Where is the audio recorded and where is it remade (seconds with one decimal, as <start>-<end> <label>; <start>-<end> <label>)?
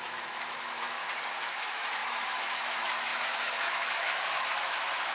0.0-1.0 remade; 1.0-1.5 recorded; 1.5-5.1 remade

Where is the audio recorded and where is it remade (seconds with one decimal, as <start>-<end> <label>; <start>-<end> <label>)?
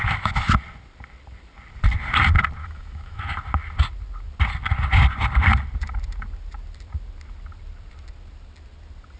0.0-2.6 recorded; 2.6-3.2 remade; 3.2-9.2 recorded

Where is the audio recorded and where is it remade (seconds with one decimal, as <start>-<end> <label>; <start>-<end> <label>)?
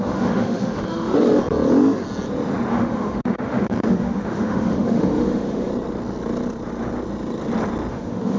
0.0-1.4 remade; 1.4-2.7 recorded; 2.7-5.7 remade; 5.7-7.9 recorded; 7.9-8.4 remade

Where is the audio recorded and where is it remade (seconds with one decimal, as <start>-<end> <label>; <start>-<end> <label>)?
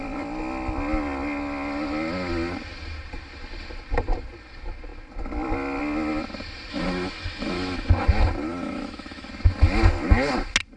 0.0-6.7 recorded; 6.7-7.9 remade; 7.9-8.5 recorded; 8.5-9.3 remade; 9.3-10.8 recorded